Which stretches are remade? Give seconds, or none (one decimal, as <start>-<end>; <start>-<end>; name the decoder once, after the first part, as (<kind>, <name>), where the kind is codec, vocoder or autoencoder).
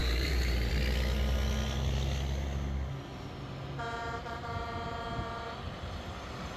0.0-0.7 (vocoder, BigVGAN v2); 4.0-5.6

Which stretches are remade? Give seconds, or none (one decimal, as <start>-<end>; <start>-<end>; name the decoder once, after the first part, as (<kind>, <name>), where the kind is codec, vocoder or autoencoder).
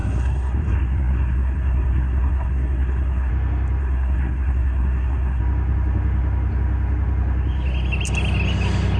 0.0-3.3 (codec, SNAC); 3.8-5.4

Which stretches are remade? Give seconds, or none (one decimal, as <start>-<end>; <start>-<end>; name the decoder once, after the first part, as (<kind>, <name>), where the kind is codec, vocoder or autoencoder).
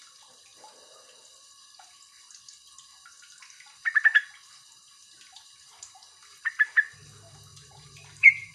7.5-8.5 (vocoder, BigVGAN v2)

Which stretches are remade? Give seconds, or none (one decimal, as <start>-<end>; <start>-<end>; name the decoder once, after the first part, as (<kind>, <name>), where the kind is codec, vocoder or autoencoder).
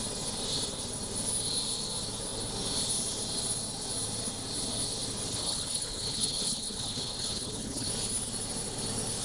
5.3-7.9 (codec, HILCodec)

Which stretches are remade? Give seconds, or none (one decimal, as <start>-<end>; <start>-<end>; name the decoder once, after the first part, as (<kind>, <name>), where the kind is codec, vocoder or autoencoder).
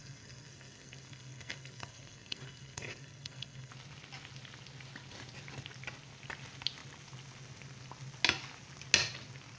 0.0-3.7 (codec, SNAC)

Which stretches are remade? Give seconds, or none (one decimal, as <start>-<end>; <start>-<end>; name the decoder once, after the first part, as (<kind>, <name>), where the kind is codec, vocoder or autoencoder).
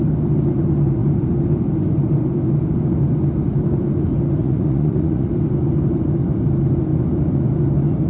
4.4-5.3 (vocoder, Vocos)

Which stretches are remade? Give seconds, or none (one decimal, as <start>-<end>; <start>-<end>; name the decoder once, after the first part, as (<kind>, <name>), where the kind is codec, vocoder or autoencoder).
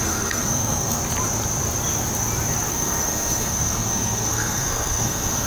0.0-1.0 (codec, SNAC); 2.7-5.5